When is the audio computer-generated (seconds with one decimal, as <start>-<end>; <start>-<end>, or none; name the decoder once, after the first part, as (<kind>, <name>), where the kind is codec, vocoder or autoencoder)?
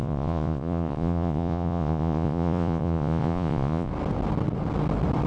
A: 0.0-3.9 (vocoder, Vocos)